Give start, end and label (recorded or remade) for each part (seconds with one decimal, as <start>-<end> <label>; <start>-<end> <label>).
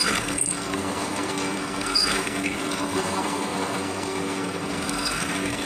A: 0.0-5.7 remade